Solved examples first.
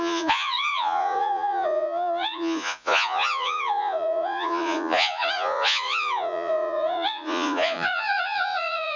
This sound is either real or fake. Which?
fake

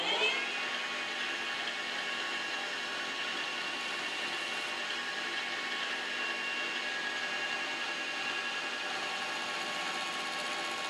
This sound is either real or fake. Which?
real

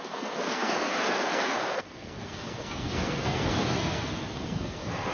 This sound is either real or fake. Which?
fake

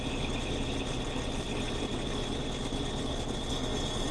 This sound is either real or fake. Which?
real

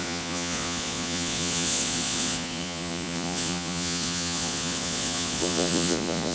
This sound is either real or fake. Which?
fake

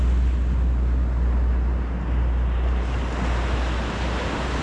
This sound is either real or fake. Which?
real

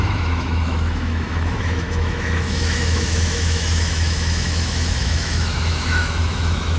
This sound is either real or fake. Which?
fake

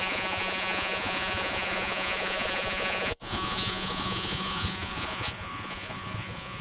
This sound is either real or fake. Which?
fake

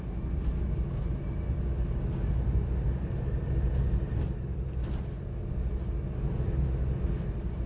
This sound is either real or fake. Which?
real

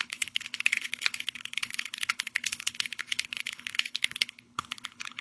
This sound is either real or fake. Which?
fake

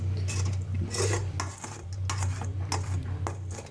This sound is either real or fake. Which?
real